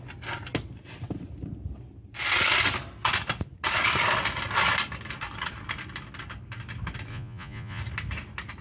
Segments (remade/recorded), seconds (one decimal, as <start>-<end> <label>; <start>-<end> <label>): 0.0-7.1 recorded; 7.1-7.8 remade; 7.8-8.6 recorded